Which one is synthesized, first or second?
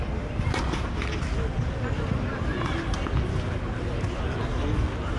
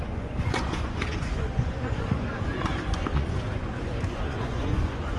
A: second